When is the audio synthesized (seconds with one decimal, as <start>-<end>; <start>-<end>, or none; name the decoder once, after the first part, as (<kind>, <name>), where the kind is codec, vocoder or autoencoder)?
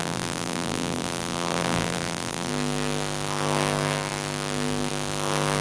0.0-2.5 (vocoder, BigVGAN v2)